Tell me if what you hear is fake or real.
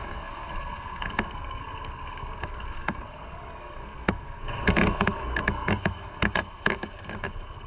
fake